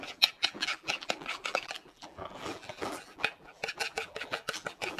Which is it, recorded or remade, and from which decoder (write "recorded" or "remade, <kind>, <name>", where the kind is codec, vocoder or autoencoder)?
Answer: remade, vocoder, BigVGAN v2